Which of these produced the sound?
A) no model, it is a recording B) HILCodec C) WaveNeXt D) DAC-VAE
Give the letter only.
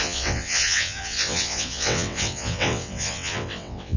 C